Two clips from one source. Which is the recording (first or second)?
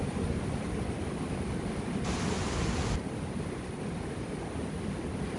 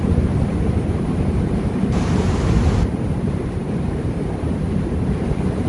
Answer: first